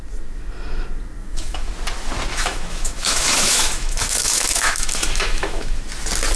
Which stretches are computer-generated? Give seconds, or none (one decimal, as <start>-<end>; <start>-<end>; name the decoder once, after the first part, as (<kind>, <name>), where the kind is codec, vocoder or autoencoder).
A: 1.2-1.7 (autoencoder, DAC-VAE); 2.3-5.8